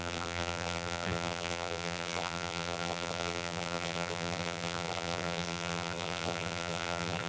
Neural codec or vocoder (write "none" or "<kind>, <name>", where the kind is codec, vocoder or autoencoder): vocoder, BigVGAN v2